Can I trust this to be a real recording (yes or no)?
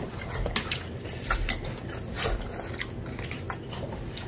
yes